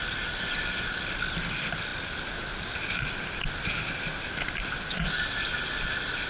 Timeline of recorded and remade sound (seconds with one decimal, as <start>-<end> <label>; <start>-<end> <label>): 0.0-6.3 recorded